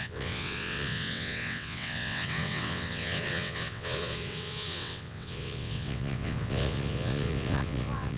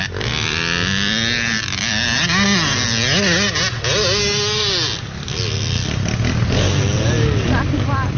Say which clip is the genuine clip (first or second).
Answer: second